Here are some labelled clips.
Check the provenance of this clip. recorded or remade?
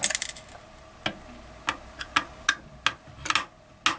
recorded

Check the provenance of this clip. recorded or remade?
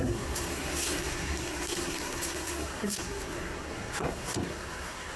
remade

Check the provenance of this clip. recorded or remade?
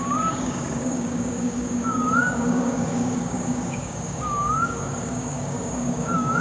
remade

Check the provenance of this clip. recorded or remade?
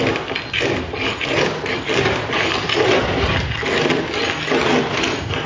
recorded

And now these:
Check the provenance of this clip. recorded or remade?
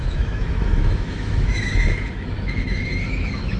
remade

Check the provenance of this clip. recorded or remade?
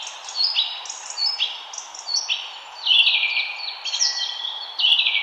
recorded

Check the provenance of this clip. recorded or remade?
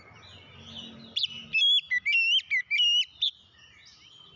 recorded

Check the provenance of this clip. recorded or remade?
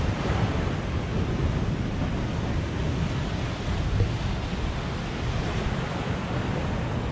recorded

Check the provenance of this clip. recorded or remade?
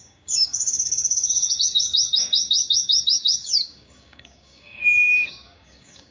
remade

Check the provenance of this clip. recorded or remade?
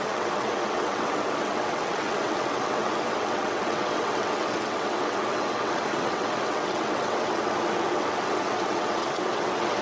remade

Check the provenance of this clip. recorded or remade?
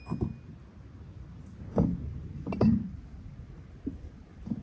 recorded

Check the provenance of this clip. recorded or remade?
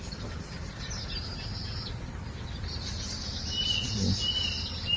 recorded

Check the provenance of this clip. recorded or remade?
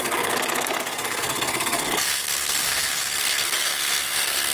remade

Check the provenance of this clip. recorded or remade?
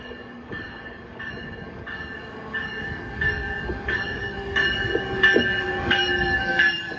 remade